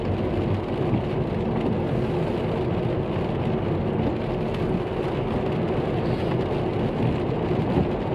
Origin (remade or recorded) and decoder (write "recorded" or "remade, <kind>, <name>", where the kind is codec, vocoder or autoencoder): recorded